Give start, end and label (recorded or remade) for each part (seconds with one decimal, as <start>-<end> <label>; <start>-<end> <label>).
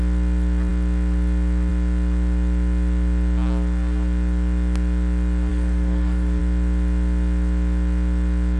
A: 0.0-5.5 recorded; 5.5-6.4 remade; 6.4-8.6 recorded